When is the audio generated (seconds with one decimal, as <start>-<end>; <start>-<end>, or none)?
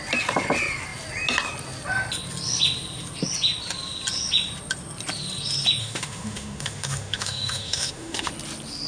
5.8-8.3